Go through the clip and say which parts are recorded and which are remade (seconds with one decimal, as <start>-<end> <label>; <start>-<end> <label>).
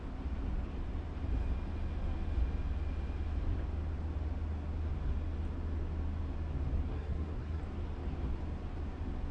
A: 0.0-6.9 recorded; 6.9-7.6 remade; 7.6-9.3 recorded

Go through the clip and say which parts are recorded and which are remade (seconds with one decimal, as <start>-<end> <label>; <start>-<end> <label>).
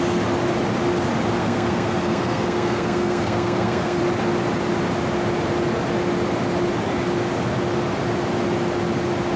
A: 0.0-1.4 recorded; 1.4-4.0 remade; 4.0-9.4 recorded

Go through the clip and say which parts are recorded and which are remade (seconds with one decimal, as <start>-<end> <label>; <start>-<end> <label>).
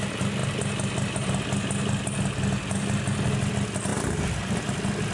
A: 0.0-5.1 recorded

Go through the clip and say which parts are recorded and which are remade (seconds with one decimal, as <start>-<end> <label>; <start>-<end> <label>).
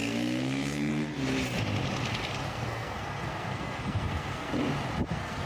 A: 0.0-0.9 remade; 0.9-2.4 recorded; 2.4-4.5 remade; 4.5-5.1 recorded; 5.1-5.5 remade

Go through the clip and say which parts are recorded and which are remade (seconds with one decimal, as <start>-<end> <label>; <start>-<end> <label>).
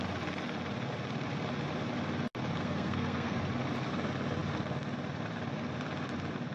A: 0.0-2.6 recorded; 2.6-3.4 remade; 3.4-6.5 recorded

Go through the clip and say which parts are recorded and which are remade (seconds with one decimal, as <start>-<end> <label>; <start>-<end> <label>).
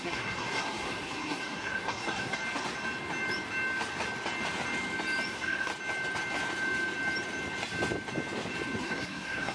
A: 0.0-2.4 remade; 2.4-5.3 recorded; 5.3-5.7 remade; 5.7-8.8 recorded; 8.8-9.5 remade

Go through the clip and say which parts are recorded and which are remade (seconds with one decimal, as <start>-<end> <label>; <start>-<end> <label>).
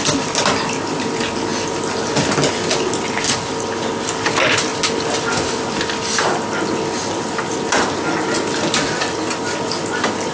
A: 0.0-10.3 recorded